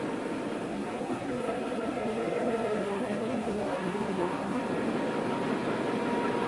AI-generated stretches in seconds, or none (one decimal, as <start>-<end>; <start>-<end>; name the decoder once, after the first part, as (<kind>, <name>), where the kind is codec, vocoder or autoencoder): 0.7-4.6 (codec, SNAC)